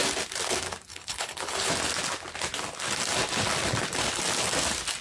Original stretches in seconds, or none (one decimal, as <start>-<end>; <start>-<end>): 0.0-0.9; 1.7-5.0